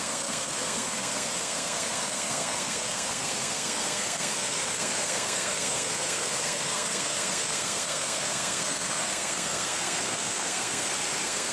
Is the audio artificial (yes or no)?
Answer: yes